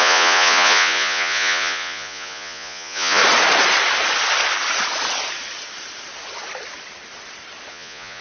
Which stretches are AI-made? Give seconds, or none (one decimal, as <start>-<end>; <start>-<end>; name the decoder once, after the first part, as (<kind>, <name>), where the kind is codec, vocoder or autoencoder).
0.0-3.2 (vocoder, Vocos); 7.7-8.2